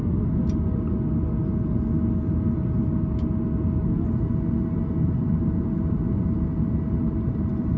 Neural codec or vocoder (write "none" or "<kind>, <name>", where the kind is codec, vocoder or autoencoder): none